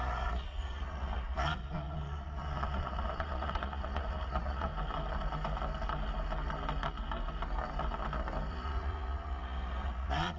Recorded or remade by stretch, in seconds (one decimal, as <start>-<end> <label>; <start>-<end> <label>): 0.0-4.7 remade; 4.7-8.5 recorded; 8.5-10.4 remade